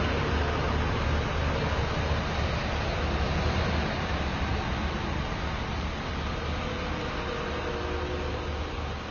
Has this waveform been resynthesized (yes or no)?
no